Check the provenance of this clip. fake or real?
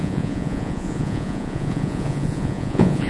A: fake